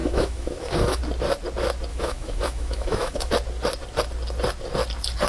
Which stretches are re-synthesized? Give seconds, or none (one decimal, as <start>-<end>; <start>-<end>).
0.0-1.0; 1.9-3.3